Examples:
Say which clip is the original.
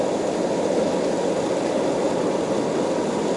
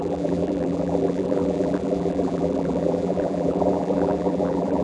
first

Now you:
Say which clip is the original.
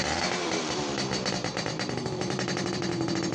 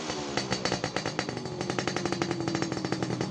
second